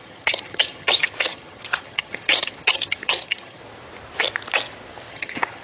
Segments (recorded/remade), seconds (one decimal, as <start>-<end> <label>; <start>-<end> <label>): 0.0-3.6 remade; 3.6-5.1 recorded; 5.1-5.6 remade